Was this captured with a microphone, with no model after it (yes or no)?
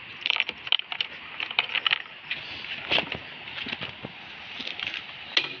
yes